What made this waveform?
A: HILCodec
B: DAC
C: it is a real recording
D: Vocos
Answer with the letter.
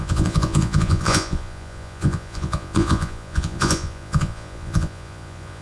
D